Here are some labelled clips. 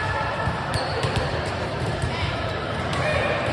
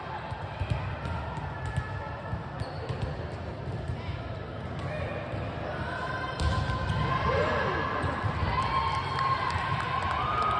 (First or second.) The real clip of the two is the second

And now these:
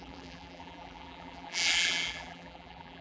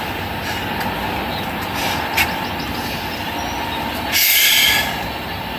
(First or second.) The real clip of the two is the second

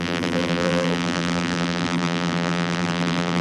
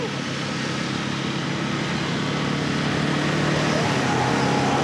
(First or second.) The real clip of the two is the second